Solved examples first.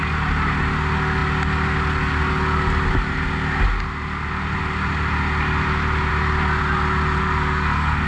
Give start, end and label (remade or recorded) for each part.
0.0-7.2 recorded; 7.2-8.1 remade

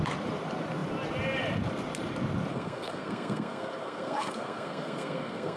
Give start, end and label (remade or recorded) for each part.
0.0-2.5 recorded; 2.5-5.6 remade

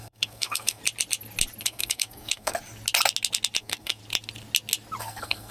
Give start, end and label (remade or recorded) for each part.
0.0-0.8 remade; 0.8-1.6 recorded; 1.6-2.6 remade; 2.6-3.6 recorded; 3.6-4.0 remade; 4.0-5.0 recorded; 5.0-5.5 remade

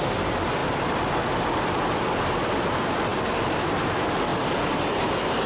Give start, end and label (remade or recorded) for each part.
0.0-5.5 recorded